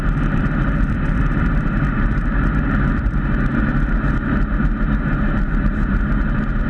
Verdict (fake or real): fake